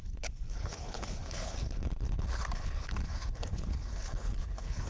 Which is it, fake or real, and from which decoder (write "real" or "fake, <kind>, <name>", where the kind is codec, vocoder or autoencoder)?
fake, codec, HILCodec